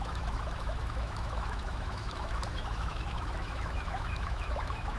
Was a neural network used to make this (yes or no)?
yes